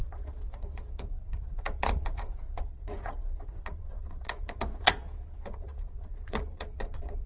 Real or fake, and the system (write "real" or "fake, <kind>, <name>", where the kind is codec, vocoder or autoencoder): fake, vocoder, Vocos